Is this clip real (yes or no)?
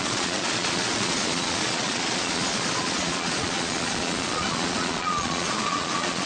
no